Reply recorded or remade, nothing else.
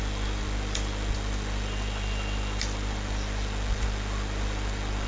recorded